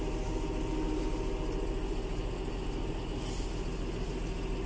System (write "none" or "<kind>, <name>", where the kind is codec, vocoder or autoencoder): none